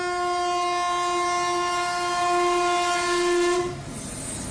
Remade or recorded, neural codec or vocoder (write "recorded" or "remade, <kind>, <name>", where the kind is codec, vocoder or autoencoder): recorded